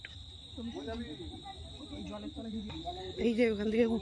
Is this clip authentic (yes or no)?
yes